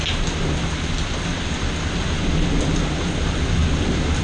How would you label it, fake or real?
real